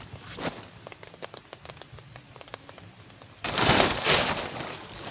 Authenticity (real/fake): real